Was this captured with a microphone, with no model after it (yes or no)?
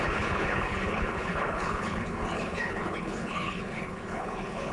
no